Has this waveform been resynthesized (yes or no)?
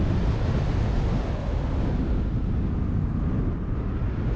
no